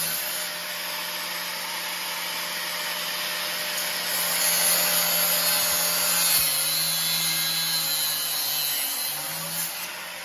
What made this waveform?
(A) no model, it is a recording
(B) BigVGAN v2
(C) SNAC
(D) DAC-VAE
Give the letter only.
A